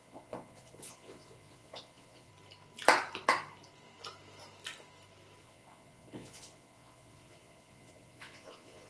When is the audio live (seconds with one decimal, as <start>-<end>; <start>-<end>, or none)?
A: 2.3-5.4